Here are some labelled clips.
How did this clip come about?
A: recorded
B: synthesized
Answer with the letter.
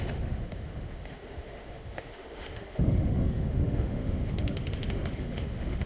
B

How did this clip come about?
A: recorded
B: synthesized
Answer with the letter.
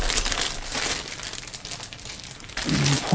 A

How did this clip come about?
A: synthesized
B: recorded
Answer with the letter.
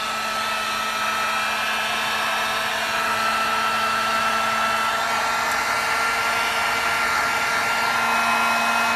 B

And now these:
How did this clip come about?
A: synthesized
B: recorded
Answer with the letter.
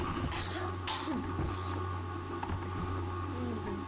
B